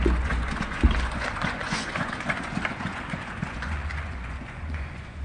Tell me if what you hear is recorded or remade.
remade